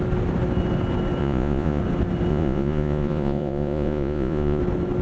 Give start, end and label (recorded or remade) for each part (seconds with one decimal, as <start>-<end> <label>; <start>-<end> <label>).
0.0-1.2 recorded; 1.2-1.8 remade; 1.8-2.3 recorded; 2.3-4.6 remade; 4.6-5.0 recorded